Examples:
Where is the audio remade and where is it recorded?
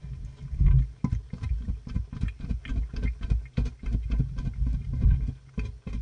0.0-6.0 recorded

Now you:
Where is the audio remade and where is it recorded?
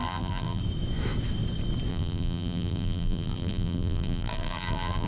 0.0-0.6 remade; 0.6-1.9 recorded; 1.9-5.1 remade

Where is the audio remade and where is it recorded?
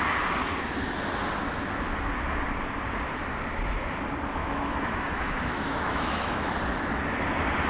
0.0-4.4 recorded; 4.4-6.5 remade; 6.5-7.7 recorded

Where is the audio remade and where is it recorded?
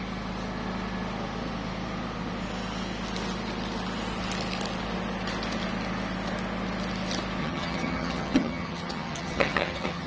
0.0-7.4 recorded; 7.4-10.1 remade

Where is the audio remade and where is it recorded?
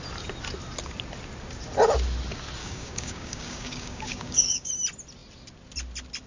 0.0-2.6 recorded; 2.6-4.7 remade; 4.7-6.3 recorded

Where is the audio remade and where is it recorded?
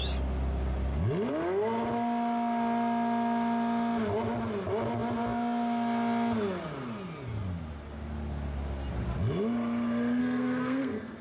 0.0-10.2 recorded; 10.2-11.2 remade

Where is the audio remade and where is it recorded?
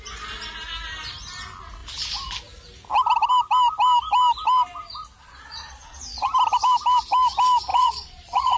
0.0-5.2 recorded; 5.2-6.3 remade; 6.3-7.7 recorded; 7.7-8.6 remade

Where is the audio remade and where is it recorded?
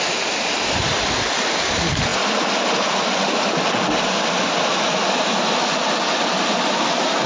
0.0-7.3 recorded